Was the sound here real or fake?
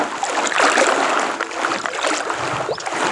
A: real